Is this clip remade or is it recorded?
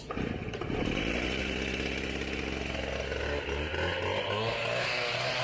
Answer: recorded